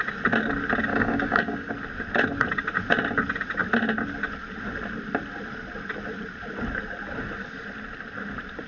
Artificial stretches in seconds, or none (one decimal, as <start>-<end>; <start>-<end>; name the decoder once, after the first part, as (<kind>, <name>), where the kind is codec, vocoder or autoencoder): 0.9-1.7 (codec, DAC)